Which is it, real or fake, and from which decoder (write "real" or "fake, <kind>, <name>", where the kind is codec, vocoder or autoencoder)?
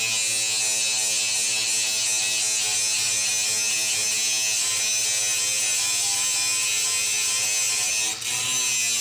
real